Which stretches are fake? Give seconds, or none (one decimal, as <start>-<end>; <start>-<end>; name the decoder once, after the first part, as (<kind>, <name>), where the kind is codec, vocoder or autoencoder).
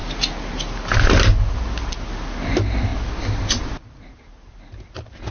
none